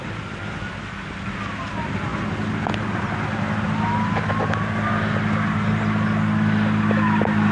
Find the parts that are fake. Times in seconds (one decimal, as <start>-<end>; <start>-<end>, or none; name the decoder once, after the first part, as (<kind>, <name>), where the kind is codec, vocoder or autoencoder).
none